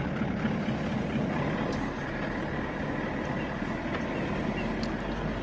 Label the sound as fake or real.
real